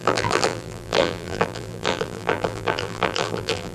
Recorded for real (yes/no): no